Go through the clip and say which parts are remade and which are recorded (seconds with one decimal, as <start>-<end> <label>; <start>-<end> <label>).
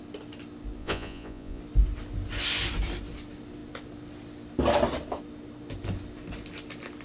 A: 0.0-0.8 recorded; 0.8-1.6 remade; 1.6-7.0 recorded